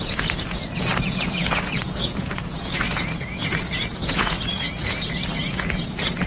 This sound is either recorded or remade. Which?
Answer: remade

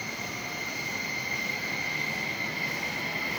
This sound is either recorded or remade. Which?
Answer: recorded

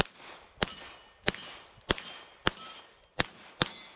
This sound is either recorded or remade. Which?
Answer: recorded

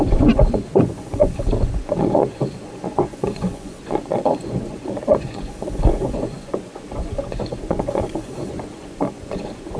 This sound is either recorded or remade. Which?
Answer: remade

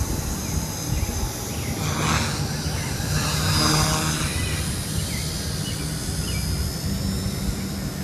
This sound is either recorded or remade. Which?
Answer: recorded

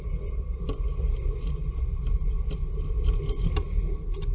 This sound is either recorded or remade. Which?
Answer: recorded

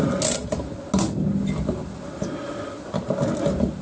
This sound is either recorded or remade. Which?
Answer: recorded